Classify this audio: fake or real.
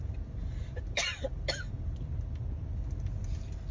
real